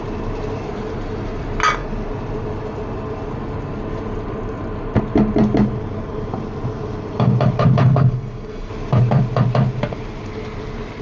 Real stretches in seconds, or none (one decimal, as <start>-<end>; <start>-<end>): 0.0-7.8; 8.7-11.0